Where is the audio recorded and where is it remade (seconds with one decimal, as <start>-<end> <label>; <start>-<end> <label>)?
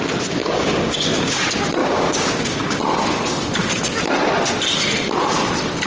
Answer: 0.0-0.4 recorded; 0.4-1.4 remade; 1.4-1.8 recorded; 1.8-2.8 remade; 2.8-5.9 recorded